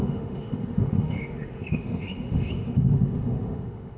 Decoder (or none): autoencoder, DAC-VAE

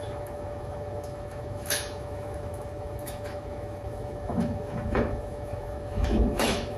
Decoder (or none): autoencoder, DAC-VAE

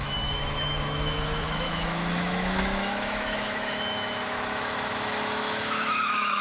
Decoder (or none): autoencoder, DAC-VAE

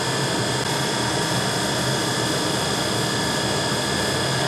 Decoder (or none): none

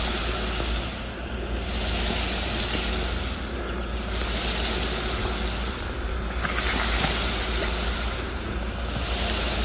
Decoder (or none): none